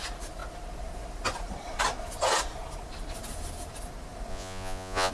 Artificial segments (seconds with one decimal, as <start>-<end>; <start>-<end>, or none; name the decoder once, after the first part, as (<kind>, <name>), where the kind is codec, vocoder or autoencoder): 4.3-5.1 (vocoder, Vocos)